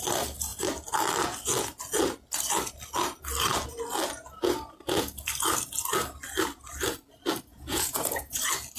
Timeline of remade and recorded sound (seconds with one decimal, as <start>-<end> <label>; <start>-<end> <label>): 0.0-7.5 recorded; 7.5-8.4 remade; 8.4-8.8 recorded